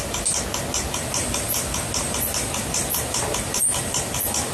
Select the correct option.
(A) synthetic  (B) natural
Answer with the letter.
B